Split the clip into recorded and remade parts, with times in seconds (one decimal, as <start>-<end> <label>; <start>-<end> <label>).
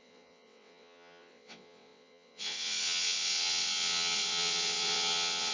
0.0-5.5 remade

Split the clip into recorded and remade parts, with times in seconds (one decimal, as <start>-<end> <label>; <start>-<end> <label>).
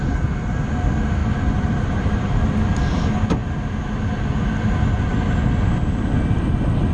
0.0-1.2 recorded; 1.2-2.4 remade; 2.4-6.9 recorded